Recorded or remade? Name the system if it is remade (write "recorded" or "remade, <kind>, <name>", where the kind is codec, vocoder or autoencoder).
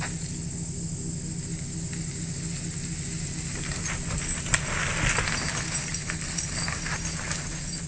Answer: recorded